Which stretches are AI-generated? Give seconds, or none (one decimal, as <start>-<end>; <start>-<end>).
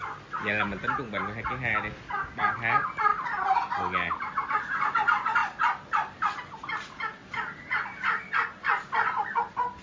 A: none